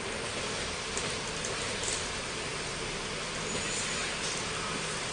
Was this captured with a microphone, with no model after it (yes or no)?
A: yes